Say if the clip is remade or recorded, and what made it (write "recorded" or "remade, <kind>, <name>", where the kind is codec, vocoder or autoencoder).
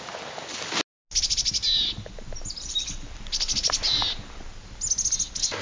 recorded